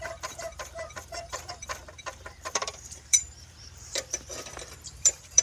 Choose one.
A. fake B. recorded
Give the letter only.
A